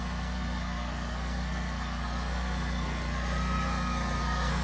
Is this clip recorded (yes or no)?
no